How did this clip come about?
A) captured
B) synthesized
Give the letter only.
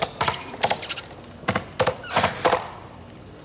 B